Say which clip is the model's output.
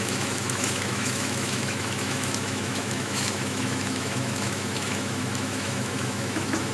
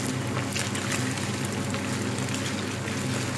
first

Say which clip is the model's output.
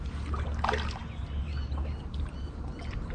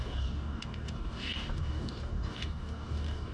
second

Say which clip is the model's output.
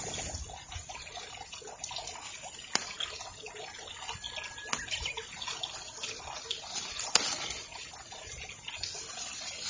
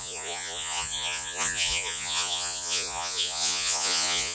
second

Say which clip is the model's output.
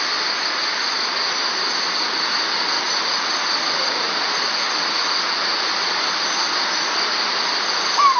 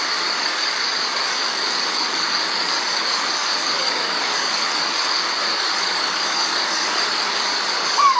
second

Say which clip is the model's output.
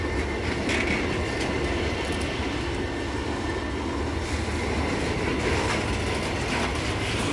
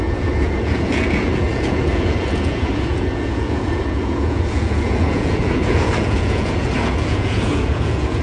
second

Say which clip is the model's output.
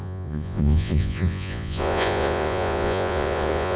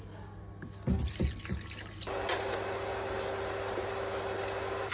first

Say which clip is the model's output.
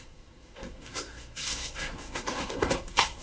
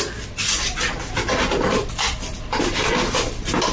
first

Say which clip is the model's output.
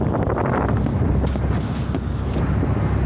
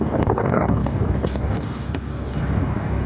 second